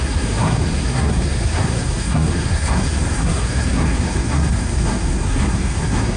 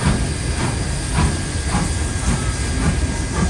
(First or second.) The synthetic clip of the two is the first